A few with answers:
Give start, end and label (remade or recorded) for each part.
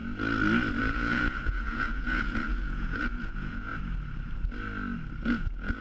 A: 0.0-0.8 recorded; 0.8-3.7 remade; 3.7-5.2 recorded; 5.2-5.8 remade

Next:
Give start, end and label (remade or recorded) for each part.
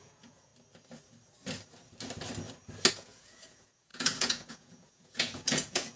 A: 0.0-0.5 remade; 0.5-2.9 recorded; 2.9-6.0 remade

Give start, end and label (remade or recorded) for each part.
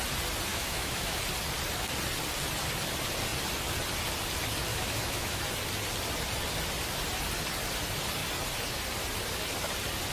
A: 0.0-0.5 recorded; 0.5-1.2 remade; 1.2-4.7 recorded; 4.7-5.4 remade; 5.4-10.1 recorded